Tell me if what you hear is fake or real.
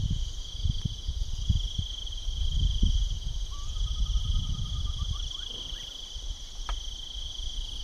real